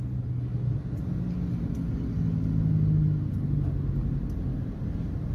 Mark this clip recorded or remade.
recorded